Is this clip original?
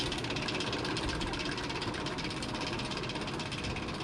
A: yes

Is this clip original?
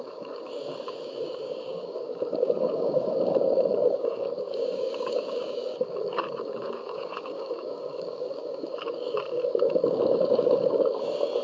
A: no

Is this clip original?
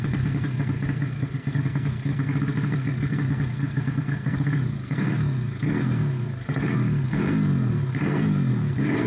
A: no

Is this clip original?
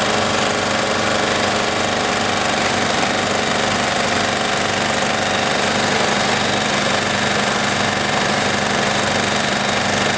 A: yes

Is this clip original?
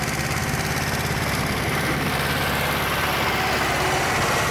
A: yes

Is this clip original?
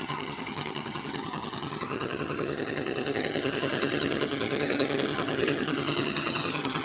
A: no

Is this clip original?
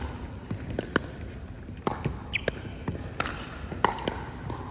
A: yes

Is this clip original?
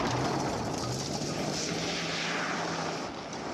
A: yes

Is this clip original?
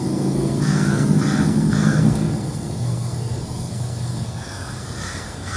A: no